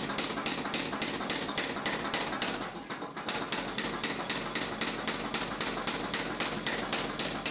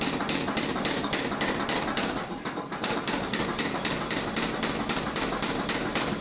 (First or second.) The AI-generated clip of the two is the second